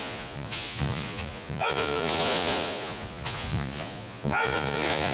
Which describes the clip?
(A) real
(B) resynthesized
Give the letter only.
B